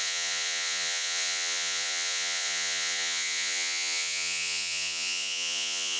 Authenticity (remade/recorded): remade